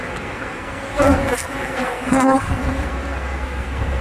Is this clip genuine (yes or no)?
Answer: no